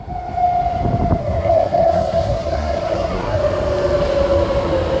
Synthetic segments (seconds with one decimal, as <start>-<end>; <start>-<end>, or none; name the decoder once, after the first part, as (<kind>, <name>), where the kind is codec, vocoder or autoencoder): 1.2-3.4 (codec, SNAC)